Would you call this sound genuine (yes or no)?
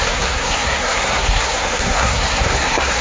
no